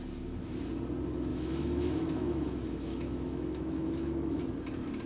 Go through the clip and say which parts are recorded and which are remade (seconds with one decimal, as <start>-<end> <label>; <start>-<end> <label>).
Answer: 0.0-1.3 recorded; 1.3-4.4 remade; 4.4-5.1 recorded